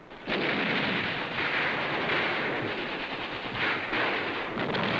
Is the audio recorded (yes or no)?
yes